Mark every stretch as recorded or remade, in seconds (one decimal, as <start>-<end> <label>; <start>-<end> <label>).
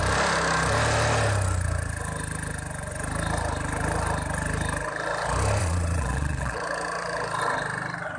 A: 0.0-5.6 recorded; 5.6-6.6 remade; 6.6-8.2 recorded